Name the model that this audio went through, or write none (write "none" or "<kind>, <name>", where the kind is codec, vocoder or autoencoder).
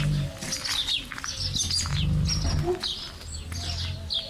none